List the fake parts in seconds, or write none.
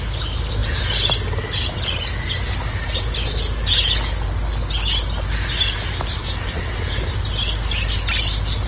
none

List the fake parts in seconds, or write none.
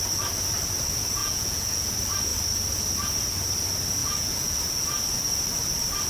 1.2-1.9 (vocoder, Vocos); 4.0-4.6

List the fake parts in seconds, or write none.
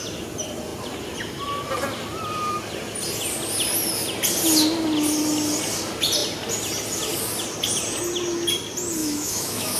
9.0-9.8 (autoencoder, DAC-VAE)